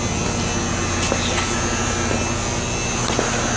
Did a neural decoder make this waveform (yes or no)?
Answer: no